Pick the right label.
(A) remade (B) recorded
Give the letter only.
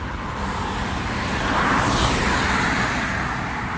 B